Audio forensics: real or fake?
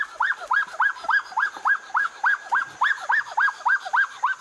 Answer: real